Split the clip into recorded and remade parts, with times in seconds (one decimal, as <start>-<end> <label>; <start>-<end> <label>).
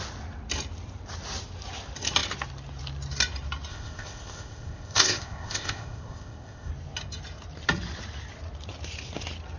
0.0-3.7 recorded; 3.7-6.7 remade; 6.7-9.6 recorded